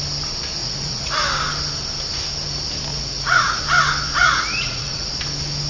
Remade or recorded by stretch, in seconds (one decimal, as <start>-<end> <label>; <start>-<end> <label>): 0.0-0.6 recorded; 0.6-1.3 remade; 1.3-2.9 recorded; 2.9-3.6 remade; 3.6-4.2 recorded; 4.2-5.1 remade; 5.1-5.7 recorded